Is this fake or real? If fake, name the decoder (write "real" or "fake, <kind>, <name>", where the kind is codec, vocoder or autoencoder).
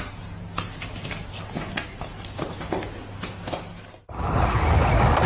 real